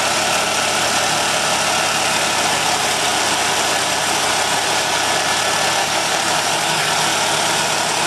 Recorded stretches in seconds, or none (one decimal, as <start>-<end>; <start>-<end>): 0.0-5.8; 6.9-8.1